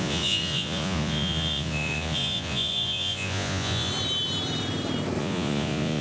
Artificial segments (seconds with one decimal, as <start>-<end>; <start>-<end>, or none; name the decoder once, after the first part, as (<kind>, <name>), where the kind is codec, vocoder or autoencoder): 0.0-3.9 (vocoder, Vocos); 5.2-6.0